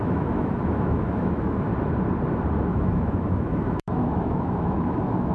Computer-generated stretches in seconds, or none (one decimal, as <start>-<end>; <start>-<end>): 0.0-1.7; 2.7-5.3